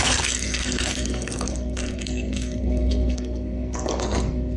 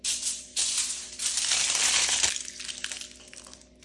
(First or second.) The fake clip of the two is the first